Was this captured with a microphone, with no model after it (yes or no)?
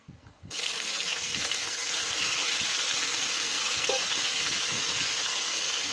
no